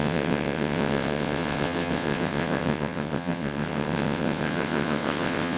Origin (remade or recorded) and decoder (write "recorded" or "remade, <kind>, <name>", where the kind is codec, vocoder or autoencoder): remade, vocoder, WaveNeXt